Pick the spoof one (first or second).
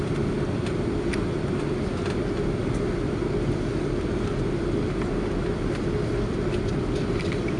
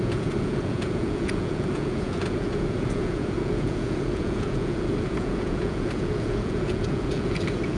second